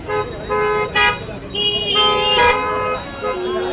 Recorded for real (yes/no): yes